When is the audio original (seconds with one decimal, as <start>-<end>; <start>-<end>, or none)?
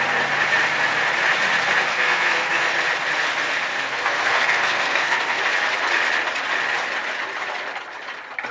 0.0-1.9; 2.7-3.7; 5.4-8.5